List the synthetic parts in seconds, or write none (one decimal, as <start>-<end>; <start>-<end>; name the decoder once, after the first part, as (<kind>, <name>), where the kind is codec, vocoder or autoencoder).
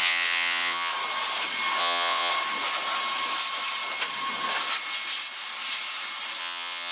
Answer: 0.0-0.9 (vocoder, WaveNeXt); 1.8-2.3; 6.4-6.9